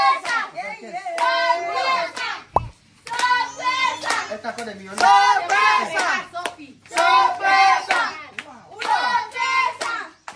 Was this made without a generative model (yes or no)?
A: yes